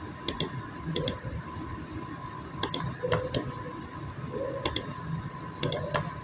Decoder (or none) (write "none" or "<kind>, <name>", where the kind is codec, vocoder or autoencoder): none